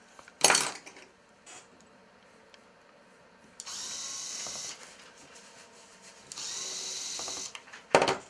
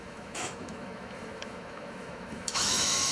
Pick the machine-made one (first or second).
second